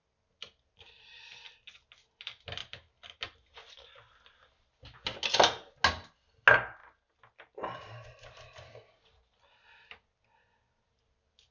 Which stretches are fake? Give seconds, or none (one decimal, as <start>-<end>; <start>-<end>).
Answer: 2.6-4.4